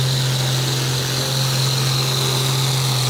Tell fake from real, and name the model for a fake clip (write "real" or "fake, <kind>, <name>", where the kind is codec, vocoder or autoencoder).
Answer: real